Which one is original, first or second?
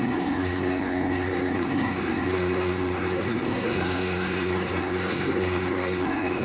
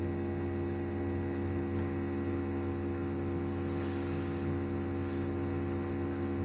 second